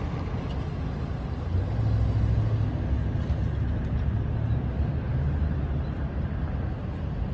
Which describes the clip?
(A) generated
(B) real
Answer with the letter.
B